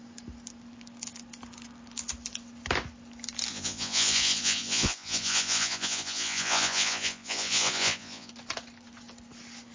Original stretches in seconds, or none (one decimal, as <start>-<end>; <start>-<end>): 0.0-3.5; 8.3-9.7